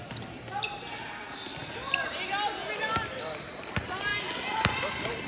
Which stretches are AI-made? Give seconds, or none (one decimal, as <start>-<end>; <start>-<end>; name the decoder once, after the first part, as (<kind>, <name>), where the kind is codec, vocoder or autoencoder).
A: none